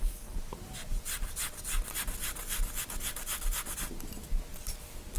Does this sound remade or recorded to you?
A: recorded